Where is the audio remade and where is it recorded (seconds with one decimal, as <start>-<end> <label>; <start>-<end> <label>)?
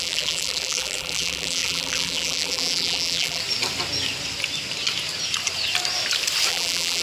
0.0-3.4 remade; 3.4-6.5 recorded; 6.5-7.0 remade